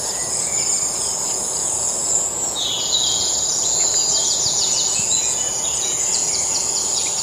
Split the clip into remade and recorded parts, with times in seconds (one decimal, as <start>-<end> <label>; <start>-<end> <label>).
0.0-7.2 remade